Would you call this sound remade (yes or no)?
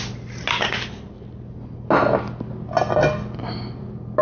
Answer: no